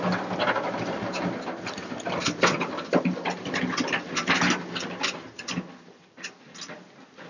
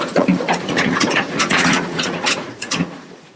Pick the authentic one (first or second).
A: first